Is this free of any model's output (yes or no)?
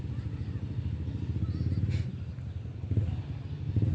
yes